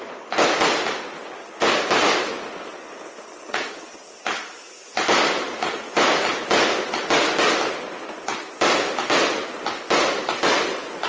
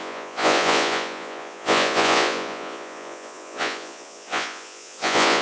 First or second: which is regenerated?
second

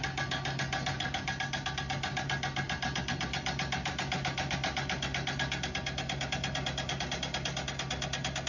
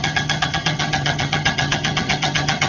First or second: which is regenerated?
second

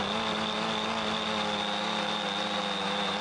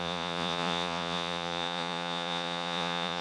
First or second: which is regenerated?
second